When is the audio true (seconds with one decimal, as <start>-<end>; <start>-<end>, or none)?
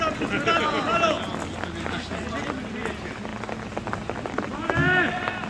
0.0-5.5